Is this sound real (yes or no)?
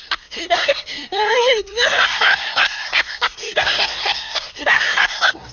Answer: no